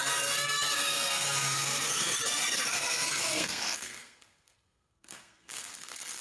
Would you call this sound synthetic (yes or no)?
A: yes